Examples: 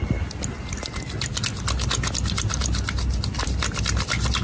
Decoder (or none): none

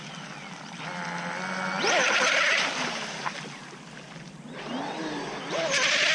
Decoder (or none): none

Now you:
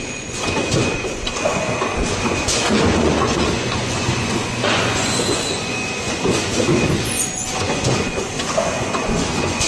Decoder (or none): vocoder, Vocos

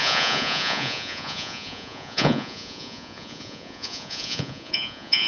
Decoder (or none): vocoder, Vocos